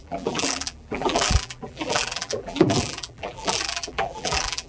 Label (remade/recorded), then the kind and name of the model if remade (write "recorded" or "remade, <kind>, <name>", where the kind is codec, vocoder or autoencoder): remade, vocoder, BigVGAN v2